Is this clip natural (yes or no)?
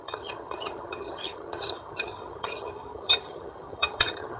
no